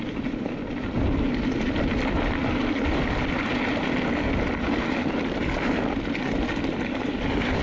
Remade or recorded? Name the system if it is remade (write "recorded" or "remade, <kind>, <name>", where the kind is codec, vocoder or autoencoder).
recorded